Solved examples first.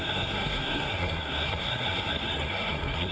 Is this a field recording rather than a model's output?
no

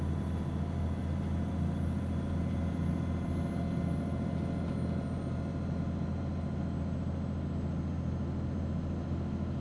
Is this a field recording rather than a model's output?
yes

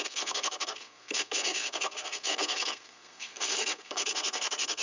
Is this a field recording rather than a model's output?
no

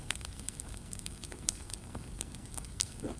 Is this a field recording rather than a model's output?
no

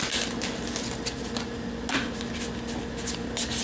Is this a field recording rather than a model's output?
yes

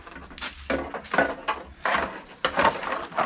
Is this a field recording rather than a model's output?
yes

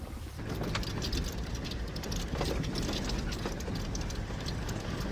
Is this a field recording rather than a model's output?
yes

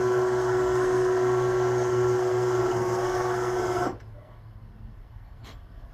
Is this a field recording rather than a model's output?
no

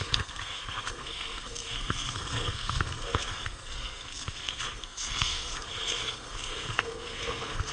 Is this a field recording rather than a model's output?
no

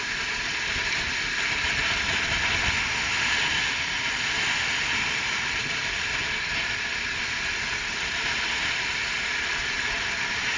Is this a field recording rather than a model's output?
yes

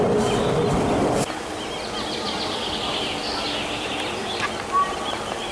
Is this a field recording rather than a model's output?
yes